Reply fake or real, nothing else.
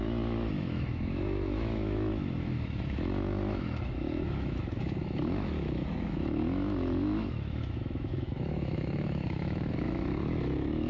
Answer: fake